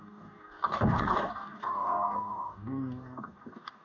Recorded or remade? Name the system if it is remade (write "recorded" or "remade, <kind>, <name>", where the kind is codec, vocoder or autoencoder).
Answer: remade, codec, DAC